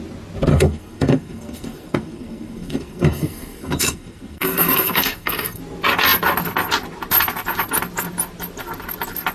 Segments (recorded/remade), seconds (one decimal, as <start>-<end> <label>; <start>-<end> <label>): 0.0-0.5 recorded; 0.5-5.6 remade; 5.6-9.3 recorded